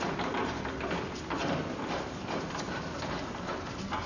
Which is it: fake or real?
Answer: real